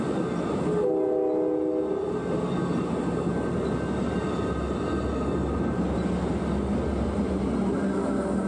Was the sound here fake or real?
real